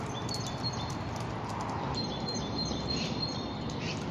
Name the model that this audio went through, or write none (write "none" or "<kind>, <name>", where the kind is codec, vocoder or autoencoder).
none